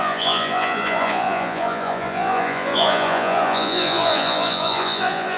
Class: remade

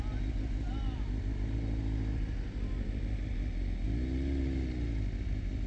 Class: recorded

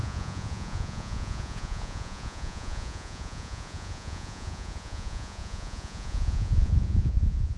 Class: remade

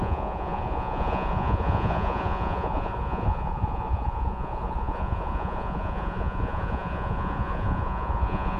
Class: remade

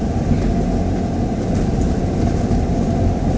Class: recorded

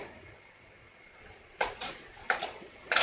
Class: remade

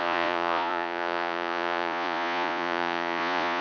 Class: remade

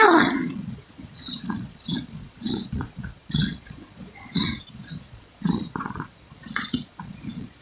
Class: remade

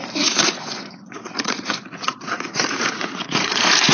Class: remade